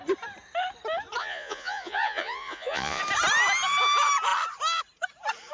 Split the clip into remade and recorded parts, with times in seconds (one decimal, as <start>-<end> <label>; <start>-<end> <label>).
0.0-1.2 recorded; 1.2-3.0 remade; 3.0-5.5 recorded

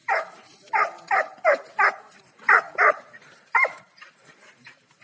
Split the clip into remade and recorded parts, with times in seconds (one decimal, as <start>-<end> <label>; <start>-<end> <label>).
0.0-5.0 recorded